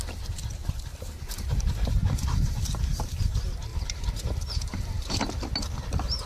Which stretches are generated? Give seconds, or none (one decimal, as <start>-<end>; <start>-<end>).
0.9-3.2; 3.7-5.1

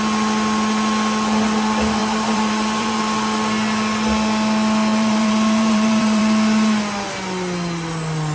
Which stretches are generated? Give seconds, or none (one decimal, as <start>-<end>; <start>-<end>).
2.0-3.0; 4.9-6.2

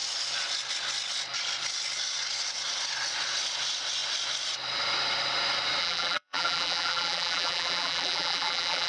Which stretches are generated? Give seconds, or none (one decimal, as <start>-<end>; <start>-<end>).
5.8-8.9

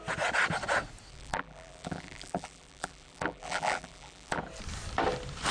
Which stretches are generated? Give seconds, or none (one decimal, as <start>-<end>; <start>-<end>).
1.1-4.4

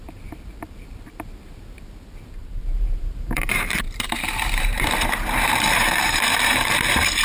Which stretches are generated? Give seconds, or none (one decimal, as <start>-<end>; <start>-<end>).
2.4-6.7

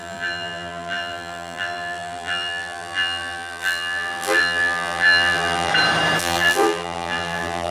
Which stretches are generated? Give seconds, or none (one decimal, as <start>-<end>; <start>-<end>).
0.0-5.7; 6.2-7.7

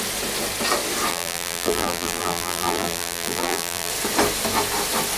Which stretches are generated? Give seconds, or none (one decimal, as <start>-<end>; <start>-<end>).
1.1-3.9